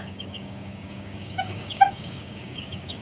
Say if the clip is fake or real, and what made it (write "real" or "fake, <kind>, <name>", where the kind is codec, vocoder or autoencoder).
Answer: fake, codec, DAC